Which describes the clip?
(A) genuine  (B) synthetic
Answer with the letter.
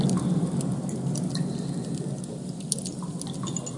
A